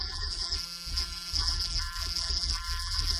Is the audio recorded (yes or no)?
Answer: no